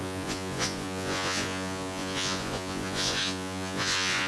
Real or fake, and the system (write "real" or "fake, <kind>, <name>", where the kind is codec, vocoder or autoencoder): fake, vocoder, Vocos